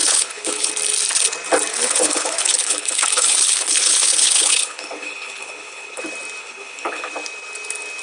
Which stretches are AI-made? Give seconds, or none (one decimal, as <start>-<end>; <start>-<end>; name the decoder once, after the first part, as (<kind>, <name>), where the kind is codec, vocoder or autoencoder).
0.0-0.7 (codec, HILCodec); 1.7-6.0; 6.4-7.1